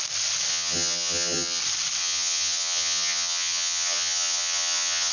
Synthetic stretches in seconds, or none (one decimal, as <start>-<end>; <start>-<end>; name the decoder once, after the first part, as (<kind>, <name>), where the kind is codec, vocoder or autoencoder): 0.5-1.6 (vocoder, HiFi-GAN); 2.0-5.1